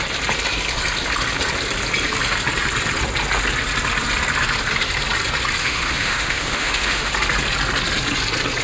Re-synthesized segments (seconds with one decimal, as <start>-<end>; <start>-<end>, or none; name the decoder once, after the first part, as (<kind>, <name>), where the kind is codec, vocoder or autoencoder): 5.6-7.1 (autoencoder, DAC-VAE)